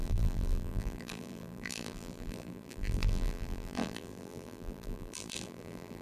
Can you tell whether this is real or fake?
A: fake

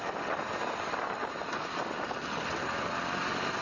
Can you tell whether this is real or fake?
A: real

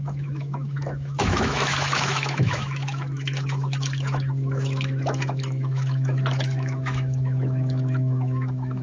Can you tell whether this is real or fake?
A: fake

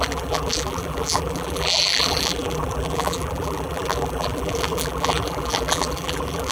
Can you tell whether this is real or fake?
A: fake